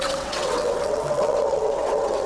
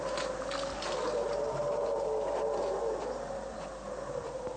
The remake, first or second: first